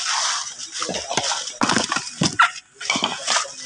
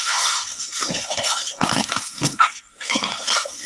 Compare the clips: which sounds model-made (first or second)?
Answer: second